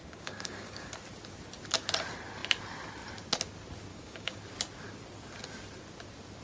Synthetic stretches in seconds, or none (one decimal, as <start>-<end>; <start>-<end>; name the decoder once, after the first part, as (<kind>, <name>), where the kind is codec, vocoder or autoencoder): 0.0-0.9 (codec, DAC); 3.9-4.4